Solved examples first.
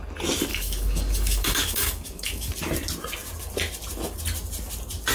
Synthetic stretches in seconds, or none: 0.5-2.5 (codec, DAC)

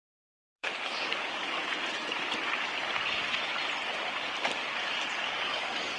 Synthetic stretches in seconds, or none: 0.0-1.6 (codec, DAC); 5.2-6.0